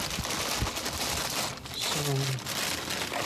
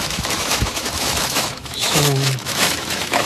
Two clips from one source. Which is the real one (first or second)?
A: first